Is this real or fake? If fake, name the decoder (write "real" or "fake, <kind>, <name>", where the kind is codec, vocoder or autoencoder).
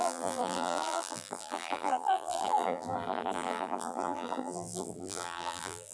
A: fake, vocoder, BigVGAN v2